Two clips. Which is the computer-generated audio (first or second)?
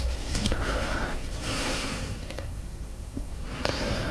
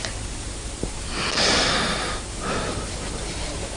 first